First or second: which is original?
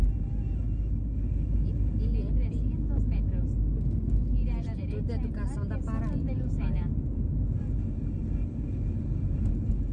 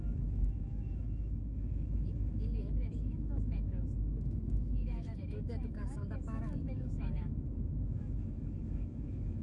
first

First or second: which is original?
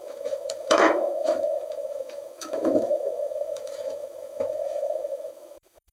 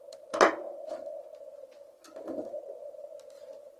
second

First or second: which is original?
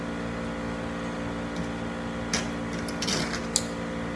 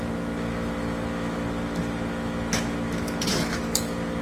first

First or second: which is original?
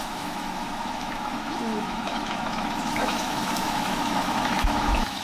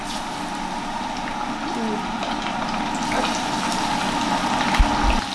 second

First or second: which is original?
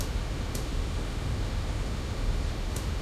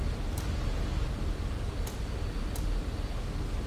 second